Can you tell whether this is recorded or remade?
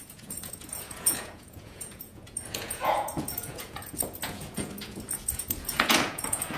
remade